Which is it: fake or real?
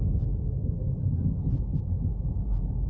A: real